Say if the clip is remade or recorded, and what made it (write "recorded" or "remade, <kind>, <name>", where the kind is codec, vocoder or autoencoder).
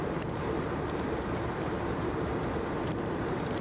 remade, vocoder, BigVGAN v2